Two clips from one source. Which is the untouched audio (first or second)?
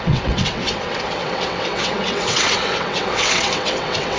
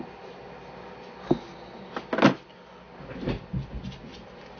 second